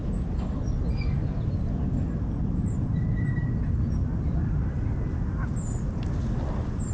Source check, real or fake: real